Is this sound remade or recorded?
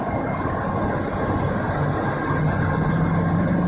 recorded